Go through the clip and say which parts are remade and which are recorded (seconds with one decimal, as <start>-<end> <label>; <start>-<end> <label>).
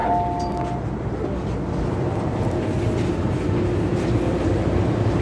0.0-5.2 recorded